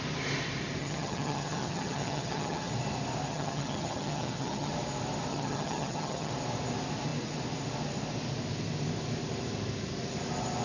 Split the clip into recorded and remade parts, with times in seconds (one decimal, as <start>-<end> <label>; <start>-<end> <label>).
0.0-0.8 recorded; 0.8-2.7 remade; 2.7-3.3 recorded; 3.3-4.7 remade; 4.7-5.3 recorded; 5.3-6.3 remade; 6.3-10.6 recorded